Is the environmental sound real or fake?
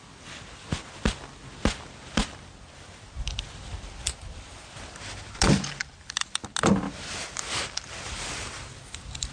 real